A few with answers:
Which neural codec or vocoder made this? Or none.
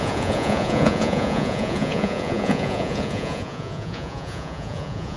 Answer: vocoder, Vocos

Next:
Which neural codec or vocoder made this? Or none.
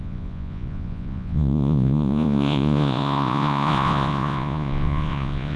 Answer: vocoder, Vocos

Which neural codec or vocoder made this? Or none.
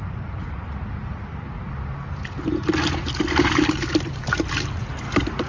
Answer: none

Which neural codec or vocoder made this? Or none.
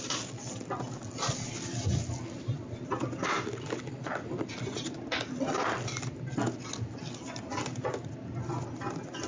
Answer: none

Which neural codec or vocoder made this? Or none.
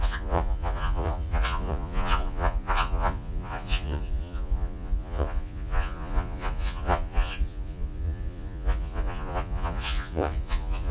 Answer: vocoder, Vocos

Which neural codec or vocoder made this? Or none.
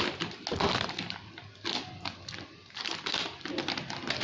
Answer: none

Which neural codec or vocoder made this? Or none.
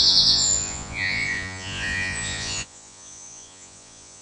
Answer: vocoder, Vocos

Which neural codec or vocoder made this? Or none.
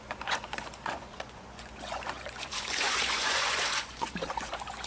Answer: vocoder, Vocos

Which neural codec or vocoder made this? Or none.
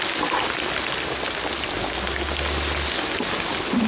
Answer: none